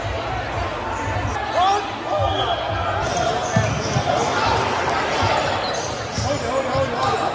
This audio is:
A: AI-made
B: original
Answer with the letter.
B